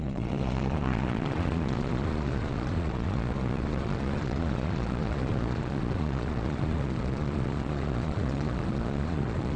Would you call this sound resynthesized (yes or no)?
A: yes